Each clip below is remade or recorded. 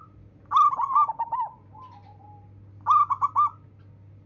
recorded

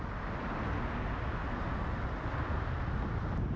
recorded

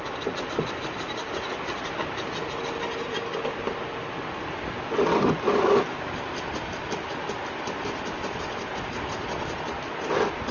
recorded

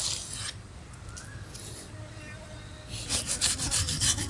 recorded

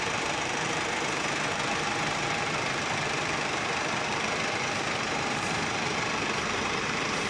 remade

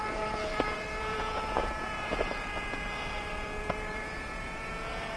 remade